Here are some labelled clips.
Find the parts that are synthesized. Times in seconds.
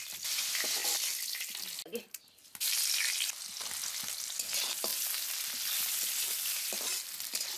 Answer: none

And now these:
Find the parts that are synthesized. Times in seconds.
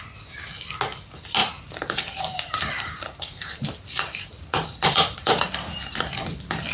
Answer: 1.4-5.4 (vocoder, BigVGAN v2)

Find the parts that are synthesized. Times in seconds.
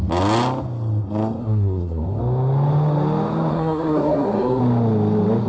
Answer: 1.4-2.2 (codec, SNAC); 3.5-4.6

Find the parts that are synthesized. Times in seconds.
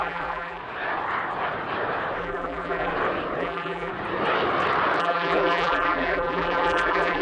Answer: 0.0-0.6 (vocoder, BigVGAN v2); 2.2-2.9; 3.4-3.9; 5.0-7.2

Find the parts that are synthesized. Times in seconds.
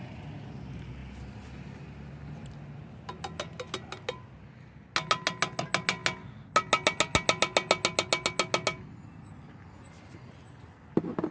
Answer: none